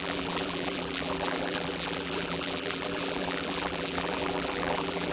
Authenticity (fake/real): fake